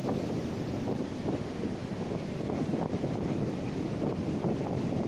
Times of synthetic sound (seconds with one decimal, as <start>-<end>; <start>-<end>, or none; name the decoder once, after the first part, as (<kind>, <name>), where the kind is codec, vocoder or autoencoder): none